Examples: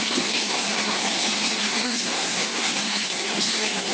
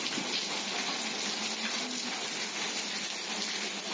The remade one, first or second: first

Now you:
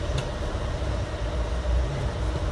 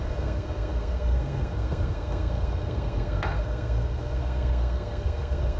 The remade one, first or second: second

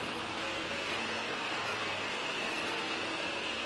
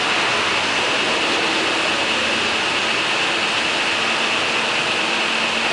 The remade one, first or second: first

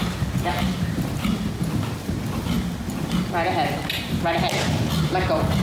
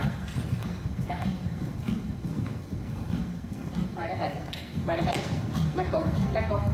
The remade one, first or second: second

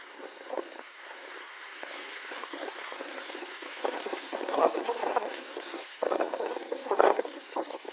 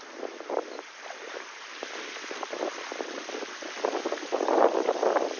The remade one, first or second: first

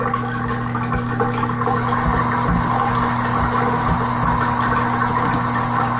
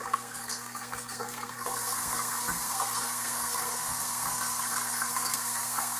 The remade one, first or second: second